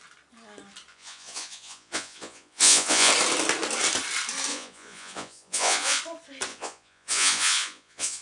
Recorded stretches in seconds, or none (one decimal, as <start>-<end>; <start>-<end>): 0.0-0.9; 3.1-4.5; 6.0-6.5